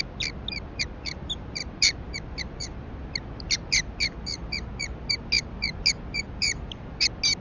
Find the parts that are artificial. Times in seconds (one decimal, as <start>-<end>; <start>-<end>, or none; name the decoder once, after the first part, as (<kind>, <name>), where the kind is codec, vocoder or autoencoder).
none